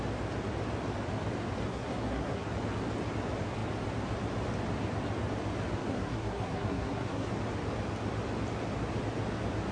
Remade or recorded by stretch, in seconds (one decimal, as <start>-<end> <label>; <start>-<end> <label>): 0.0-1.7 recorded; 1.7-2.5 remade; 2.5-5.8 recorded; 5.8-7.3 remade; 7.3-9.7 recorded